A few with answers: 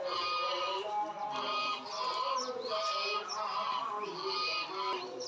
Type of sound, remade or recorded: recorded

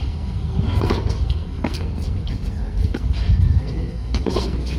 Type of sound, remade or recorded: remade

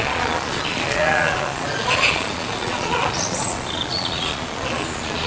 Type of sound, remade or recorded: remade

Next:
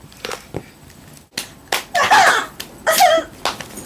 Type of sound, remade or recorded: recorded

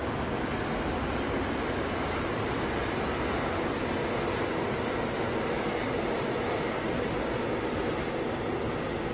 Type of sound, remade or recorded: recorded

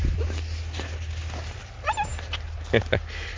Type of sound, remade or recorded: recorded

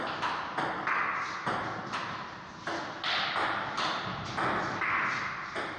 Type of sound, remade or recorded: recorded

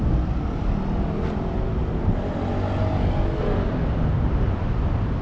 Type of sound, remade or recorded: recorded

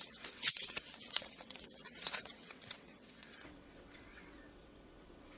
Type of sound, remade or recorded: remade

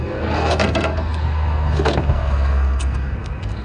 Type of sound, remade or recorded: remade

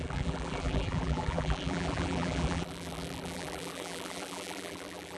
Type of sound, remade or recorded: remade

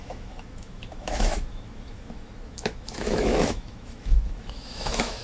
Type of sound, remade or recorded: remade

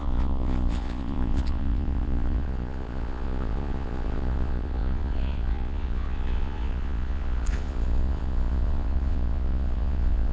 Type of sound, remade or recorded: remade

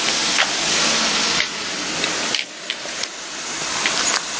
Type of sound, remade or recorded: recorded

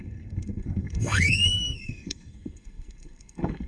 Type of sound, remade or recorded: remade